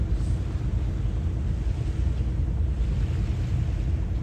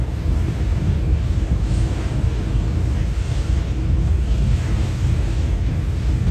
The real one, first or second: first